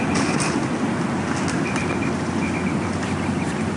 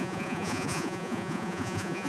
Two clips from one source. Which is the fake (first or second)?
second